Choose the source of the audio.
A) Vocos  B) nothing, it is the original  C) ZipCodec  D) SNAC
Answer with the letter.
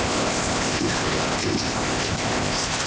C